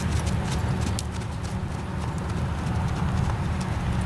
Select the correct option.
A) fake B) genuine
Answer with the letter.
B